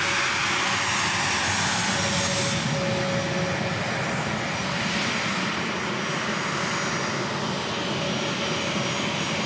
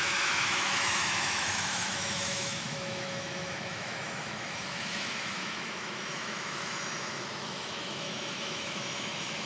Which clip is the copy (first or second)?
second